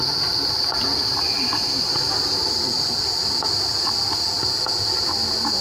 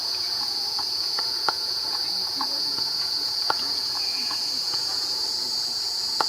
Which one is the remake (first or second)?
second